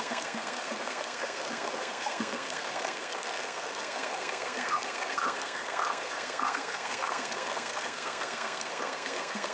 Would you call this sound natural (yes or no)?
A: no